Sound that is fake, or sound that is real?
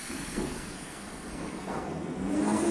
fake